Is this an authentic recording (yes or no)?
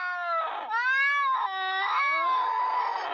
yes